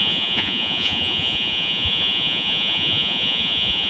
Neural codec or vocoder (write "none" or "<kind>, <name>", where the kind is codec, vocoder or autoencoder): vocoder, Vocos